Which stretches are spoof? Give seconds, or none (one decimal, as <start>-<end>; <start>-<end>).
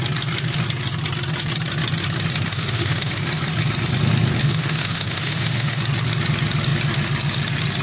2.5-3.1; 4.4-5.8